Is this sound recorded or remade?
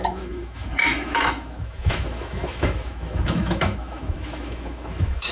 remade